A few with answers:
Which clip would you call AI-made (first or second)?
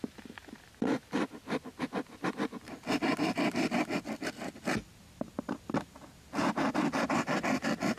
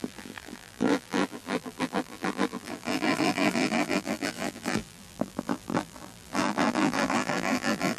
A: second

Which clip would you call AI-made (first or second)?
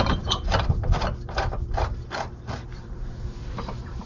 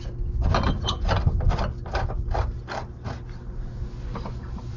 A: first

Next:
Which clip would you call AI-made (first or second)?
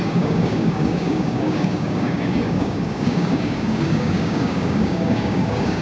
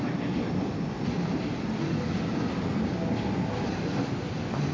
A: first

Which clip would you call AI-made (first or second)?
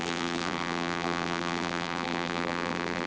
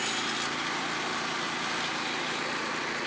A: first